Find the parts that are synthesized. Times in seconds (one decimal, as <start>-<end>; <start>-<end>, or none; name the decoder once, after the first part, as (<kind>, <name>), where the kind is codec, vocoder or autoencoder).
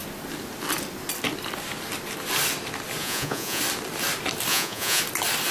3.0-3.6 (vocoder, Vocos); 4.5-5.0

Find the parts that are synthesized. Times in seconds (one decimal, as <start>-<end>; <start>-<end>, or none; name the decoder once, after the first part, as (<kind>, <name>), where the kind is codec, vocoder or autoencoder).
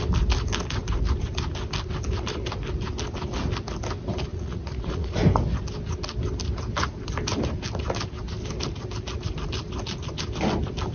4.3-5.1 (vocoder, Vocos)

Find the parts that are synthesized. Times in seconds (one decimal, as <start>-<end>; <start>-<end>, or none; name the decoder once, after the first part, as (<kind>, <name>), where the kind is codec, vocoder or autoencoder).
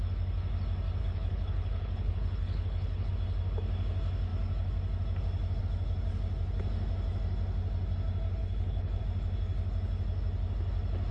1.0-3.1 (codec, HILCodec); 8.4-9.0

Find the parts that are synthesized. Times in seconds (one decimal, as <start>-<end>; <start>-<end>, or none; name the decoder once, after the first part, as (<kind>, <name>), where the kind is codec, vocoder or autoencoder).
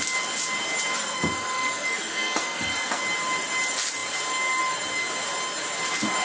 1.0-3.0 (codec, SNAC)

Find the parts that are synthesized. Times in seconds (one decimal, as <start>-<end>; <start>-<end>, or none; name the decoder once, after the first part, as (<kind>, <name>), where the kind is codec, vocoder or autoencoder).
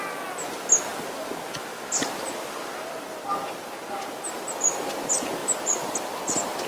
none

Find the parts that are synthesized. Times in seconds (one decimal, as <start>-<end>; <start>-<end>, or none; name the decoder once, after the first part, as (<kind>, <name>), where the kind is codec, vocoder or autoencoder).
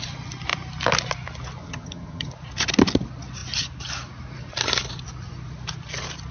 1.6-2.3 (vocoder, HiFi-GAN)